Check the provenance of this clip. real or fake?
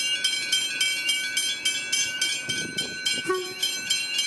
real